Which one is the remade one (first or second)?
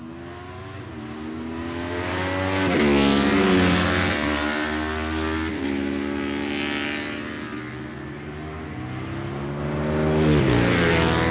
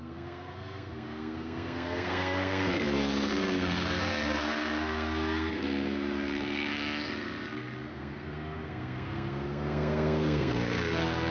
second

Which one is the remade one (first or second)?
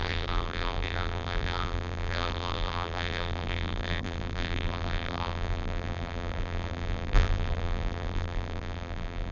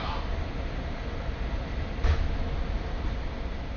first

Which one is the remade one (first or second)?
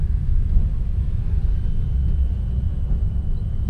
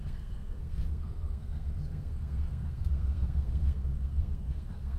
second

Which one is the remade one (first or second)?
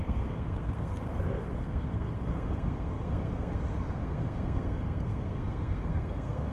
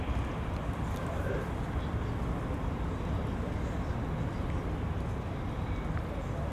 first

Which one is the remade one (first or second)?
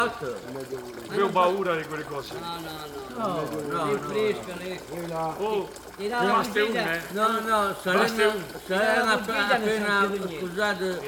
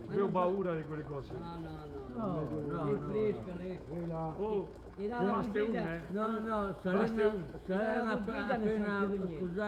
second